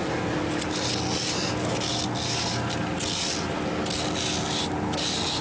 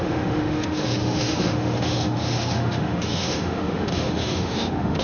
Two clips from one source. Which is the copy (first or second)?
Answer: second